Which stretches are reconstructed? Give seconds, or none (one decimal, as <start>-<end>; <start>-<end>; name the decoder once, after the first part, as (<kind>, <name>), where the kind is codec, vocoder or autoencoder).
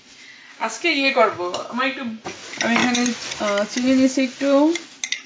0.5-1.8 (codec, DAC)